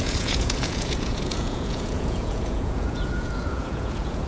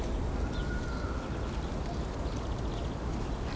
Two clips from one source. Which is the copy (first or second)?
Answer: first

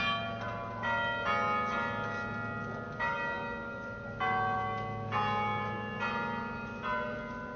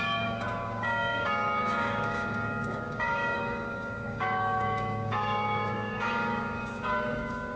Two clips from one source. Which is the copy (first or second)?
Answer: second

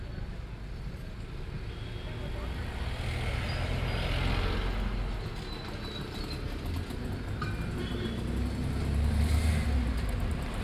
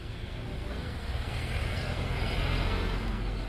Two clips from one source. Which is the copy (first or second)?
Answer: second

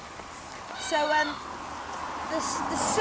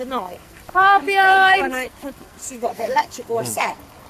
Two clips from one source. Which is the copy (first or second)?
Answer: second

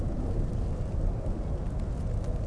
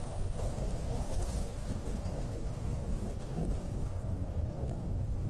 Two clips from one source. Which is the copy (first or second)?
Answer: second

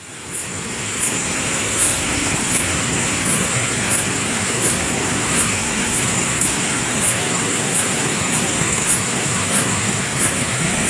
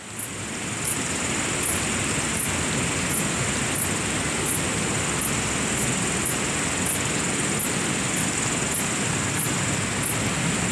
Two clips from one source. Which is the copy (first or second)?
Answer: first